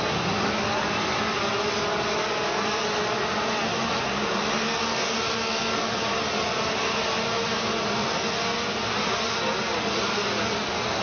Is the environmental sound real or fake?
real